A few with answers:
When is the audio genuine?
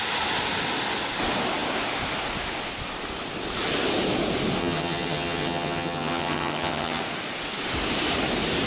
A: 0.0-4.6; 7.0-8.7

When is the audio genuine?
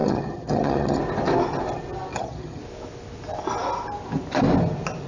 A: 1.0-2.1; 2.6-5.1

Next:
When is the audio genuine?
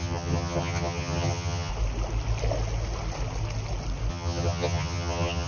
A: 1.7-4.1